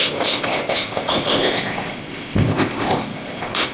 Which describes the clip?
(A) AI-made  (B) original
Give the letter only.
A